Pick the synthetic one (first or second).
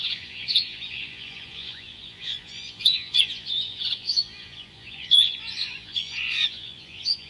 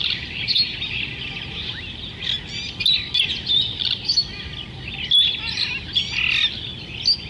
first